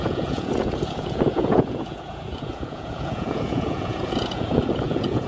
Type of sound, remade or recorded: remade